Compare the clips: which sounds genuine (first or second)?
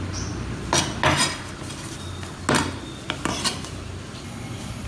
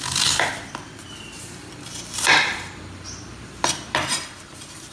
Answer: first